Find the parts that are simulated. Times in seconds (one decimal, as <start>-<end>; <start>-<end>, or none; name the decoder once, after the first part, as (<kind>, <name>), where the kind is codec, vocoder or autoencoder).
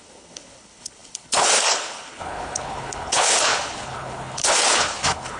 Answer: 0.0-5.4 (codec, HILCodec)